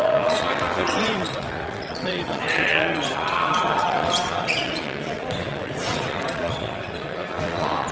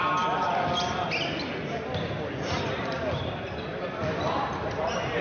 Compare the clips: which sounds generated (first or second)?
first